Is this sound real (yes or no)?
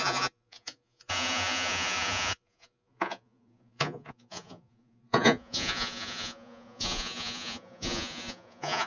no